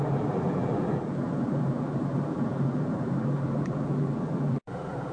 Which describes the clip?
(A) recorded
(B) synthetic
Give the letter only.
B